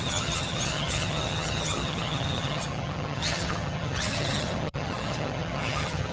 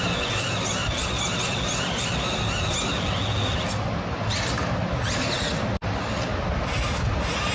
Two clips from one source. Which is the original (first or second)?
second